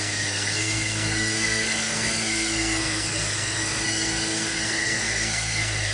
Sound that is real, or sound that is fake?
fake